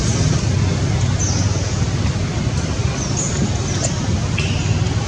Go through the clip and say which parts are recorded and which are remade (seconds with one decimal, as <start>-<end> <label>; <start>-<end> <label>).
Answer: 0.0-5.1 recorded